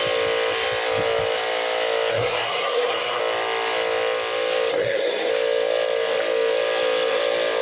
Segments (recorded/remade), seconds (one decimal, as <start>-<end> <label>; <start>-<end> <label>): 0.0-2.1 recorded; 2.1-3.2 remade; 3.2-4.7 recorded; 4.7-5.3 remade; 5.3-7.6 recorded

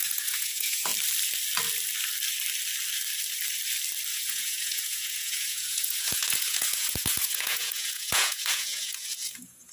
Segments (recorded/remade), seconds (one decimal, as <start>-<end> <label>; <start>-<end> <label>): 0.0-0.9 remade; 0.9-4.1 recorded; 4.1-9.7 remade

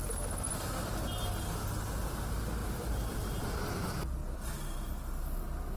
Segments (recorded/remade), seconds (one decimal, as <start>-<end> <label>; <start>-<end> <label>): 0.0-5.8 recorded

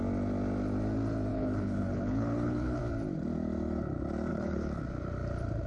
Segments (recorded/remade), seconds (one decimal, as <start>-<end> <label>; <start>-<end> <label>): 0.0-1.3 recorded; 1.3-2.8 remade; 2.8-4.3 recorded; 4.3-4.8 remade; 4.8-5.7 recorded

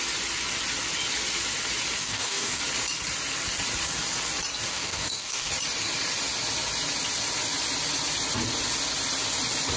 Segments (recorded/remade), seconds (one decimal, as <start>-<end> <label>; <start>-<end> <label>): 0.0-2.0 recorded; 2.0-2.6 remade; 2.6-4.7 recorded; 4.7-5.5 remade; 5.5-9.8 recorded

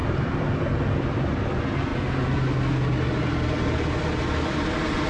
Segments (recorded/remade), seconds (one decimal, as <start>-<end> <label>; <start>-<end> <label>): 0.0-1.9 remade; 1.9-5.1 recorded